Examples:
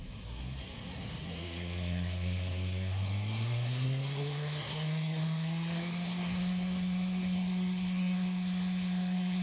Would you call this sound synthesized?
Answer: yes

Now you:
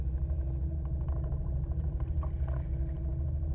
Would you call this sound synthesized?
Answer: no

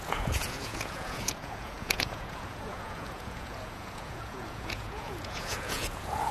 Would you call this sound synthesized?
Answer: yes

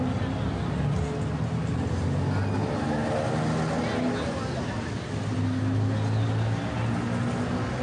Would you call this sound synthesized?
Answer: no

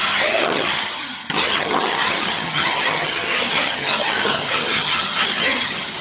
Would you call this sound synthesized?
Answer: yes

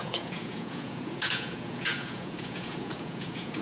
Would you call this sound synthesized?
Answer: yes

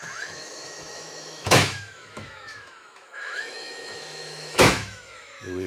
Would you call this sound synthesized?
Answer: yes